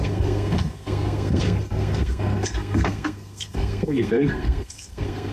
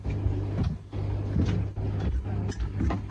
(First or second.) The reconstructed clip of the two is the first